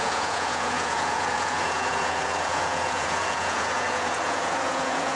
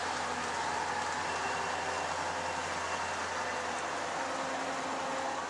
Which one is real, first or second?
second